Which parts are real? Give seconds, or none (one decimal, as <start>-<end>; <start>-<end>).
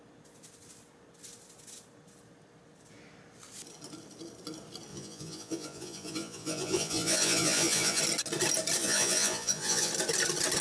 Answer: 0.0-4.9; 8.0-8.8; 9.9-10.6